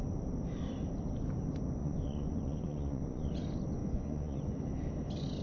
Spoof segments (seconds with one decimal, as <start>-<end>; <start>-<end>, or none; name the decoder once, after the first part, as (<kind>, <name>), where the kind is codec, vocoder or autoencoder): 1.8-3.3 (vocoder, Vocos); 3.8-4.6